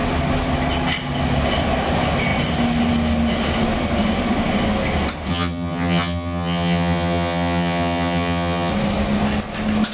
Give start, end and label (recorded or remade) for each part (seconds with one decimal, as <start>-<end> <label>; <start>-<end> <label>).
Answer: 0.0-5.3 recorded; 5.3-8.7 remade; 8.7-9.9 recorded